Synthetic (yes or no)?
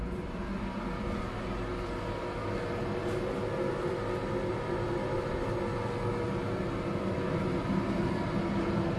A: no